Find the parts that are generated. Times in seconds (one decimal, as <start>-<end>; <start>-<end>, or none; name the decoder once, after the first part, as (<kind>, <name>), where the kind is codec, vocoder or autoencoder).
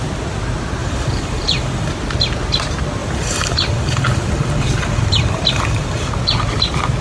0.8-1.9 (vocoder, BigVGAN v2); 3.0-6.1